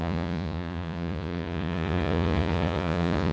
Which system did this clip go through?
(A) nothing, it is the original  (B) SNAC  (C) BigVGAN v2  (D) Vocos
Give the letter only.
D